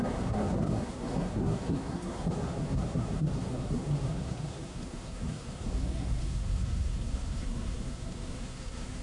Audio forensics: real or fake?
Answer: fake